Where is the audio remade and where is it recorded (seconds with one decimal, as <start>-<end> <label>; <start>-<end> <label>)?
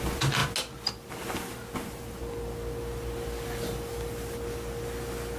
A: 0.0-5.4 recorded